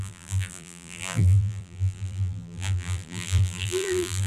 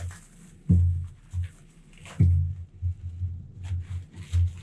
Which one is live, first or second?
second